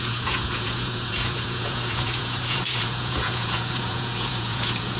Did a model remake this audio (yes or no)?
yes